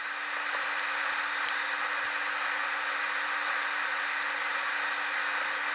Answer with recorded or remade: recorded